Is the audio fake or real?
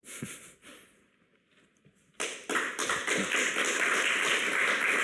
real